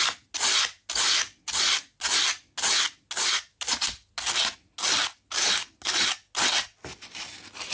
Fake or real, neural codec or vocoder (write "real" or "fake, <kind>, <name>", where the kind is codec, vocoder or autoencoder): real